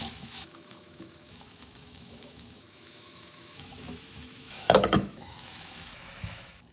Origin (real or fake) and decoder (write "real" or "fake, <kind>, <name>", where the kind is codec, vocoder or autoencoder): fake, autoencoder, DAC-VAE